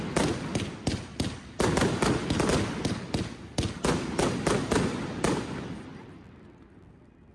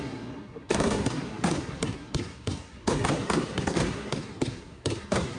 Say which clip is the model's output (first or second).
second